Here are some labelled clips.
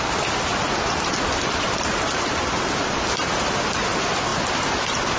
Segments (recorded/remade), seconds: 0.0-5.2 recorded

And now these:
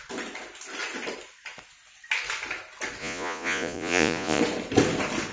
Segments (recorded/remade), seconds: 0.0-3.0 recorded; 3.0-4.4 remade; 4.4-5.3 recorded

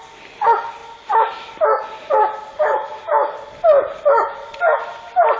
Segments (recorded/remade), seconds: 0.0-5.4 recorded